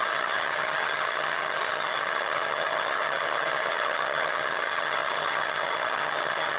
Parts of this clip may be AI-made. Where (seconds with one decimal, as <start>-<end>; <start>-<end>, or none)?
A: 0.0-6.6